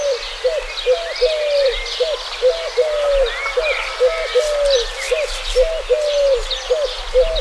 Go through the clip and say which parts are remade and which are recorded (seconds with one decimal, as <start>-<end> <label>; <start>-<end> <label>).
0.0-7.4 recorded